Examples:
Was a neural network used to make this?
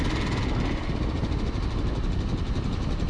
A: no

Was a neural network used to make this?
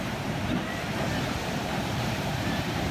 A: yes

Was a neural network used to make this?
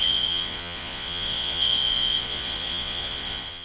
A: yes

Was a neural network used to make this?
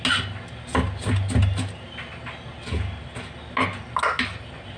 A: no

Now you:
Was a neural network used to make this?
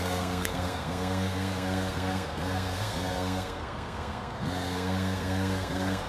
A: yes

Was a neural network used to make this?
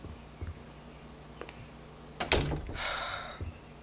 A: no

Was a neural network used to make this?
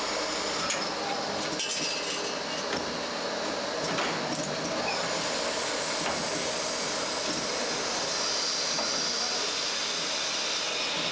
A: no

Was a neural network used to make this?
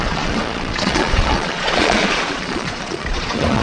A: yes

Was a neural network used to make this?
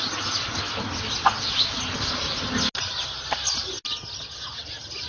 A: no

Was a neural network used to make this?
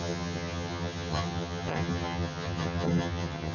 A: yes